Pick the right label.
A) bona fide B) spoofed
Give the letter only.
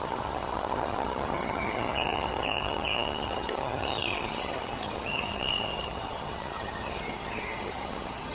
B